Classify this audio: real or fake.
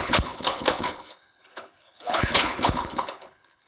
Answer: fake